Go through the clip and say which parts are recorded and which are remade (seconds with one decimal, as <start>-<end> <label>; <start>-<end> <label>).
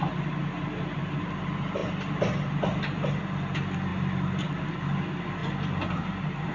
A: 0.0-6.5 recorded